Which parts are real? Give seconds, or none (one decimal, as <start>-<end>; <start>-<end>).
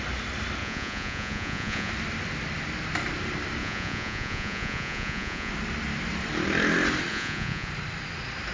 0.0-0.6; 1.9-3.6; 5.5-7.1; 7.7-8.5